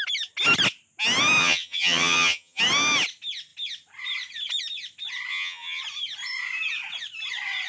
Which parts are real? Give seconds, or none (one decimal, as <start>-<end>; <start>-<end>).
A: 0.0-1.4; 2.6-5.3; 5.8-7.7